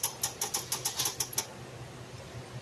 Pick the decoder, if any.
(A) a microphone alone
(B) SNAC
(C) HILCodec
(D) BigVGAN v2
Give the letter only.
A